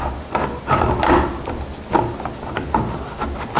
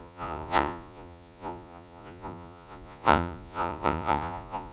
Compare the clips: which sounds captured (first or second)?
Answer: first